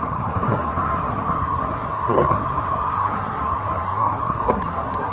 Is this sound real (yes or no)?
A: no